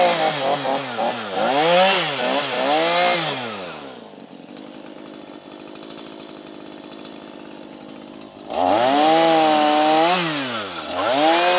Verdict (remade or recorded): recorded